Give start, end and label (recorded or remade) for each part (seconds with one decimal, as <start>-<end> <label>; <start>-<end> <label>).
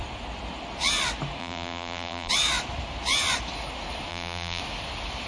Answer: 0.0-1.4 recorded; 1.4-2.3 remade; 2.3-4.1 recorded; 4.1-4.6 remade; 4.6-5.3 recorded